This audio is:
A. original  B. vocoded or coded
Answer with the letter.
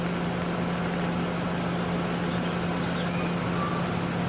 A